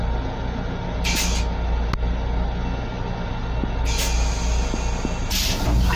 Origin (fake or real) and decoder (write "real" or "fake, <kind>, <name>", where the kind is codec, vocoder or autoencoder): real